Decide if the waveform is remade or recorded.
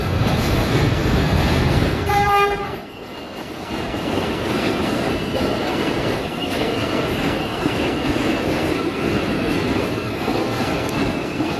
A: remade